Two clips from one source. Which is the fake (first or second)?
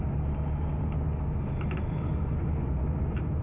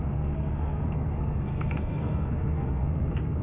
second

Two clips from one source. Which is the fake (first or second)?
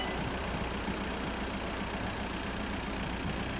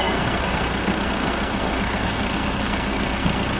second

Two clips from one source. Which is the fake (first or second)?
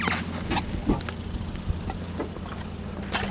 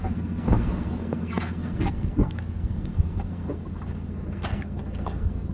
second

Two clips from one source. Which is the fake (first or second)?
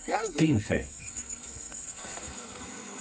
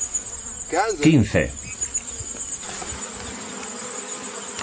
first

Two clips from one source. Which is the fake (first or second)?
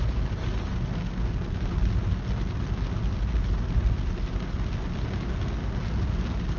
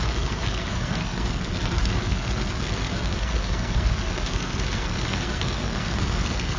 second